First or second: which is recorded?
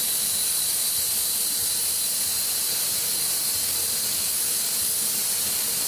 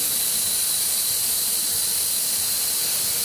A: first